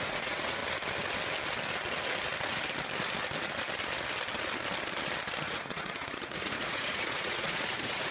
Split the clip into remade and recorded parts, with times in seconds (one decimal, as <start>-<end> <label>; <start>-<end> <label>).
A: 0.0-0.6 remade; 0.6-5.4 recorded; 5.4-8.1 remade